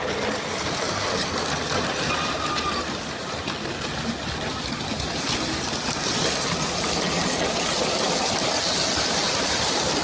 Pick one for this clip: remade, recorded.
recorded